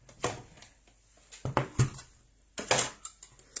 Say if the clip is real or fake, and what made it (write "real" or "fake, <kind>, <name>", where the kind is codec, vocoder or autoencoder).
real